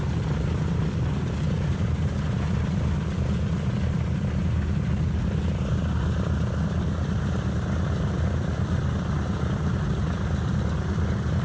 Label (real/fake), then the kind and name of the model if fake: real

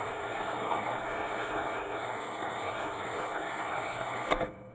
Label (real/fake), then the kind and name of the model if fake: fake, codec, SNAC